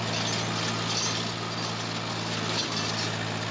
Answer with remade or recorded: recorded